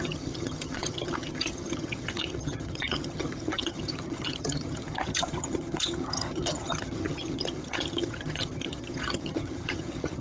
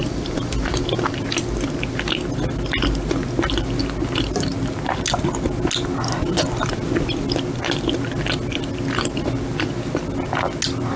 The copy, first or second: first